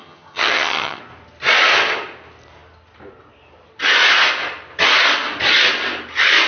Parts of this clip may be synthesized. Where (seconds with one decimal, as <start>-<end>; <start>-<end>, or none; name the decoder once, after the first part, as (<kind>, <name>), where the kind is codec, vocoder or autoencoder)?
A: 0.0-1.0 (vocoder, HiFi-GAN)